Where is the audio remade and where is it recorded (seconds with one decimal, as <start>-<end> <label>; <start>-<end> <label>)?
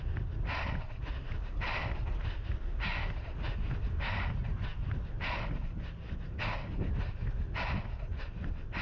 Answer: 0.0-8.8 recorded